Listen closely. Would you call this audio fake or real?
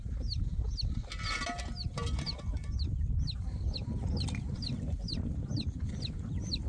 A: real